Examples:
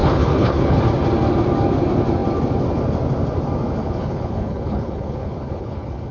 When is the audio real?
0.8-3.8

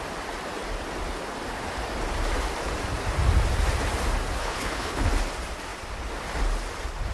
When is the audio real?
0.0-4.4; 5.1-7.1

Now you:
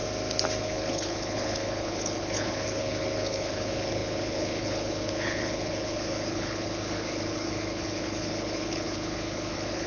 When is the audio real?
0.0-0.6

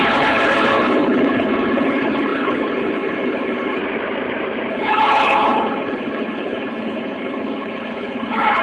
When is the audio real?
3.8-4.7